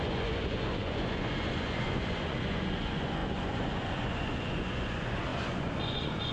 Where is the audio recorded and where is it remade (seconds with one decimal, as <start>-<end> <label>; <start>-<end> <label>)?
0.0-6.3 remade